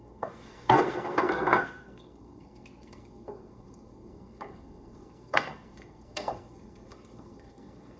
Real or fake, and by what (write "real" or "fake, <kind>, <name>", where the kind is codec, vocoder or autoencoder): fake, codec, SNAC